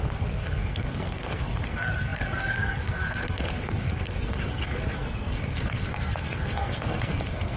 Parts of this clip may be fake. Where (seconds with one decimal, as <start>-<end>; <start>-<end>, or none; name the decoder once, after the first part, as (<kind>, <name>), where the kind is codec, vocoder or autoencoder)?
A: 0.0-7.6 (codec, SNAC)